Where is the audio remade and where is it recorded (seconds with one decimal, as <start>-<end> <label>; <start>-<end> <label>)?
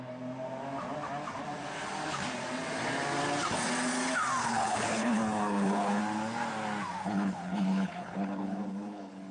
0.0-4.4 recorded; 4.4-6.0 remade; 6.0-7.0 recorded; 7.0-9.3 remade